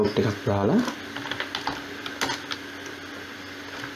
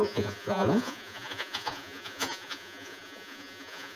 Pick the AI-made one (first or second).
second